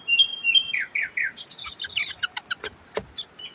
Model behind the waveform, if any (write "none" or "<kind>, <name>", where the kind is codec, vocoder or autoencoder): none